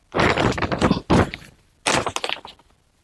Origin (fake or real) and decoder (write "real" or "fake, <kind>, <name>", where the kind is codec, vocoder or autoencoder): real